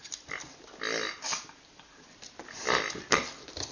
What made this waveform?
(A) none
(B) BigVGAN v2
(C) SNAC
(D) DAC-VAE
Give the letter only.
A